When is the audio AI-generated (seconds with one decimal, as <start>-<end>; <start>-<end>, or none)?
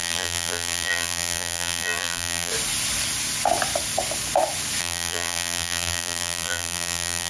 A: 0.0-2.5; 4.8-7.3